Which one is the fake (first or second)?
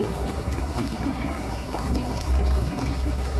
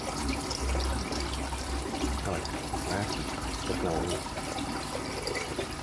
first